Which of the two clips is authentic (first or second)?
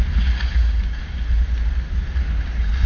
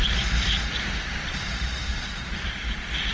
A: first